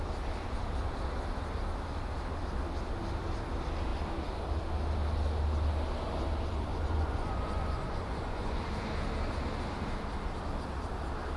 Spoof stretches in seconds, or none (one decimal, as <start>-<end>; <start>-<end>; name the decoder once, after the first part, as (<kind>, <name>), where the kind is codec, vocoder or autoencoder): 6.7-8.6 (vocoder, Vocos)